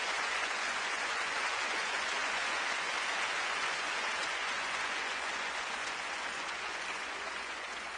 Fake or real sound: fake